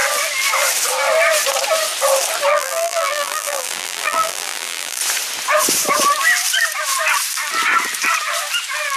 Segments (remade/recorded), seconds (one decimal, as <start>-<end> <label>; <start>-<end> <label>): 0.0-2.5 recorded; 2.5-5.0 remade; 5.0-9.0 recorded